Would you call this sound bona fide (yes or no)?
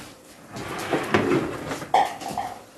yes